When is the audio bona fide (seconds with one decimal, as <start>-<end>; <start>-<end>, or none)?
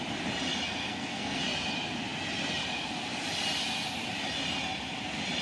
0.0-0.8; 1.4-5.4